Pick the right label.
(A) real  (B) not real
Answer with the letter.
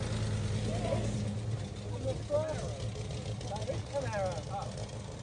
A